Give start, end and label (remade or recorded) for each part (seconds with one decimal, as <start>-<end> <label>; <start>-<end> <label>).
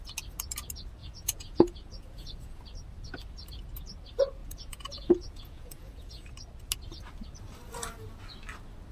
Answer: 0.0-1.0 recorded; 1.0-2.6 remade; 2.6-4.4 recorded; 4.4-6.3 remade; 6.3-8.9 recorded